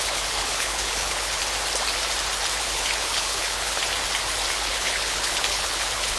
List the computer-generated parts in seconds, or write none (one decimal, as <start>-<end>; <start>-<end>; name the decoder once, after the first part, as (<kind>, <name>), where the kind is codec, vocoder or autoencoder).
0.0-1.4 (codec, HILCodec); 2.6-3.8; 4.5-6.2